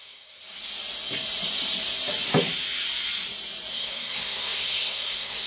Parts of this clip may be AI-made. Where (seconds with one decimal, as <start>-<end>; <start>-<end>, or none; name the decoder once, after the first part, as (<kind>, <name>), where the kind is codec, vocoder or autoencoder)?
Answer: 0.0-0.4 (codec, SNAC); 3.7-5.5